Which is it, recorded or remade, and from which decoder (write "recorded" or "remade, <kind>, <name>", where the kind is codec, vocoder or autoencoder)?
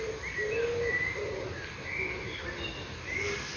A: recorded